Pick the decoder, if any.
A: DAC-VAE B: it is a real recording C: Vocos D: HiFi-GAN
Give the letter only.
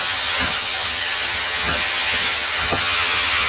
D